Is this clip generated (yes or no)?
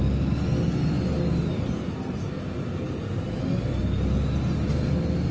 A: no